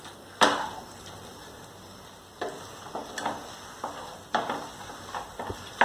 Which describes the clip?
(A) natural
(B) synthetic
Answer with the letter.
B